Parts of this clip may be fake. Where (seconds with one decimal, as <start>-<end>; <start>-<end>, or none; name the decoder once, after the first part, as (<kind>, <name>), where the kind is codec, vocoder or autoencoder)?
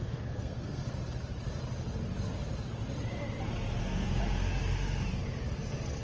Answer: 0.0-0.8 (codec, SNAC); 3.8-4.2